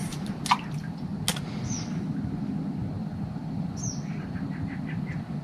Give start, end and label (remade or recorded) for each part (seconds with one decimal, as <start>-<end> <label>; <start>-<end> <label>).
0.0-5.4 recorded